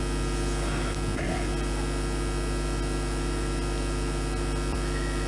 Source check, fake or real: real